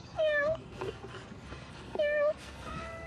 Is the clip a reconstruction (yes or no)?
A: yes